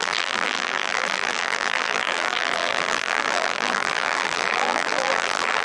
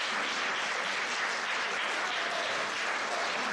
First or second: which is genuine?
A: second